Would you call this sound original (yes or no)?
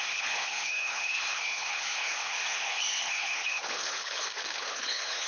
no